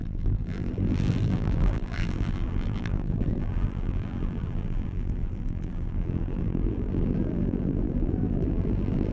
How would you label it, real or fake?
fake